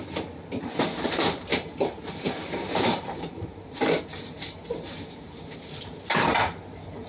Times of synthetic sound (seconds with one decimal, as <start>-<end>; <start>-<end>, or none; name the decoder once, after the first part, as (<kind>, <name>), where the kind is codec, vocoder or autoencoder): 1.5-5.8 (vocoder, BigVGAN v2)